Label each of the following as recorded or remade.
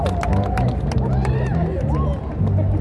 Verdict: recorded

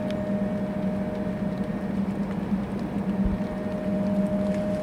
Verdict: recorded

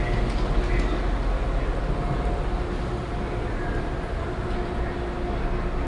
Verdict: recorded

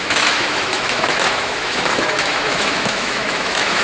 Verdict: remade